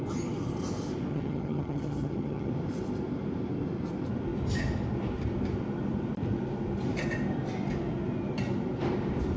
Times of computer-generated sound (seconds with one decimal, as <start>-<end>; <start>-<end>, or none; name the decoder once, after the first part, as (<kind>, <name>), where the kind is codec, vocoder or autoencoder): 1.1-2.5 (vocoder, HiFi-GAN)